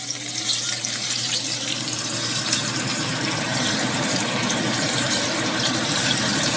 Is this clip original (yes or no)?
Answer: no